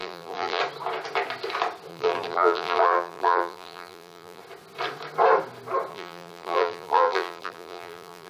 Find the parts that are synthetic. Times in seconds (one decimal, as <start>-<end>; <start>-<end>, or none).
0.0-0.6; 1.9-4.4; 5.9-8.3